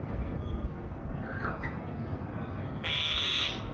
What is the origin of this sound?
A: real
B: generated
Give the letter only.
B